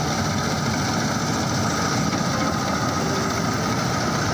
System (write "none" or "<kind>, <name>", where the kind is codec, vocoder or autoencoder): none